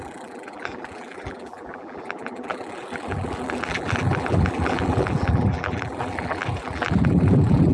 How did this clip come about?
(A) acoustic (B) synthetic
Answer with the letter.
B